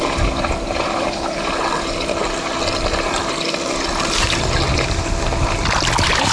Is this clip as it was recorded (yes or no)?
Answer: yes